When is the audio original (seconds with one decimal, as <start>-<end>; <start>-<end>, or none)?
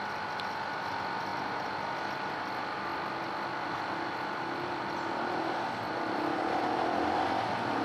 0.0-1.3; 1.8-7.8